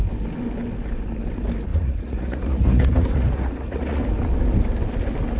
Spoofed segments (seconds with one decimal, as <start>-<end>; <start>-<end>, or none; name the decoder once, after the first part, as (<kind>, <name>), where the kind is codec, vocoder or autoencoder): 1.7-4.0 (vocoder, Vocos)

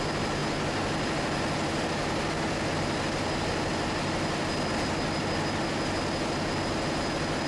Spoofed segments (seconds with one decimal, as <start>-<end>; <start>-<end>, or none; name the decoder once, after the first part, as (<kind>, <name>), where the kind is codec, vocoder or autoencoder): none

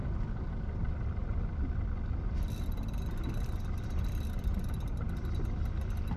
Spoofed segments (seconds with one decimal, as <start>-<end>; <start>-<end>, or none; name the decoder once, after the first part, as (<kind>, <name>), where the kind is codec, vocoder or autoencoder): none

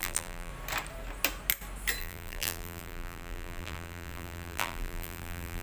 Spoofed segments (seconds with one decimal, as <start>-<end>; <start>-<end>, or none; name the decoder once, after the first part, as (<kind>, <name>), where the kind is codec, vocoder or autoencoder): 0.0-0.5 (vocoder, BigVGAN v2); 2.0-5.6